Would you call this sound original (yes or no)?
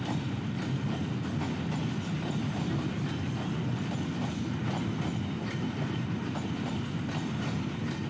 yes